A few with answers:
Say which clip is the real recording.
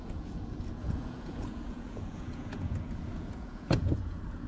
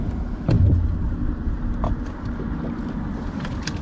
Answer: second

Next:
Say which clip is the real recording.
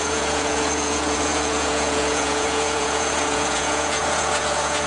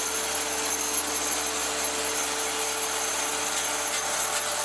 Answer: second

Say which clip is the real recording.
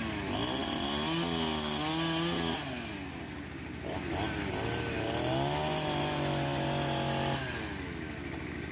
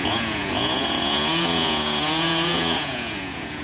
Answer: first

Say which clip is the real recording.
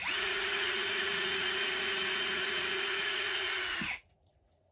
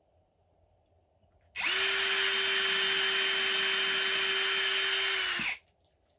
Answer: second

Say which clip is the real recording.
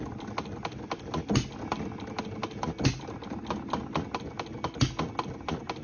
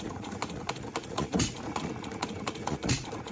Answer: first